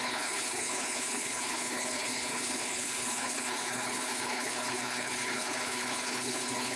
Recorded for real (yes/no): no